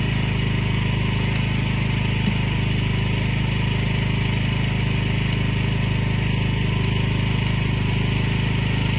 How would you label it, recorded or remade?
recorded